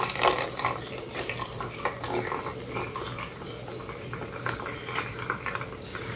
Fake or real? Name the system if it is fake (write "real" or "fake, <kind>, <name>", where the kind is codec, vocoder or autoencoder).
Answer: real